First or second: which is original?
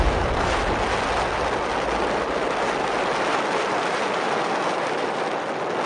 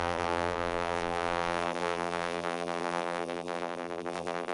first